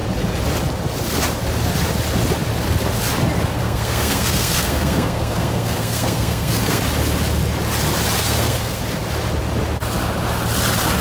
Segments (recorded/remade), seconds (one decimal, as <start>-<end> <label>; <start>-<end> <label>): 0.0-3.6 recorded; 3.6-6.8 remade; 6.8-8.2 recorded; 8.2-8.8 remade; 8.8-11.0 recorded